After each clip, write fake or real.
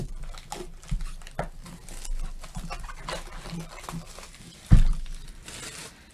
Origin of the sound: real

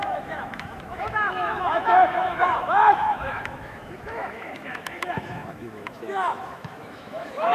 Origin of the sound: fake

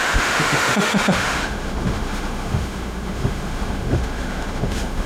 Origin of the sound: fake